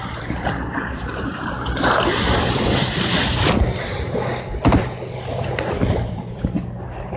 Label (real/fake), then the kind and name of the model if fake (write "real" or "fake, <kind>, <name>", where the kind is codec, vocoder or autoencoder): fake, vocoder, BigVGAN v2